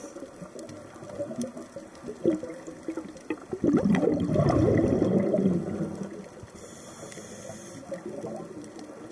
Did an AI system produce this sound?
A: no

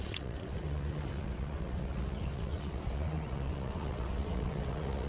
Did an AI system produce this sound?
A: yes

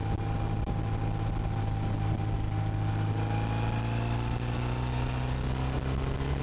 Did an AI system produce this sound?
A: no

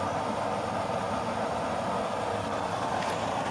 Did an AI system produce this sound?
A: no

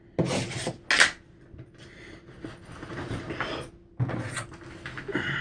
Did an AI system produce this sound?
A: no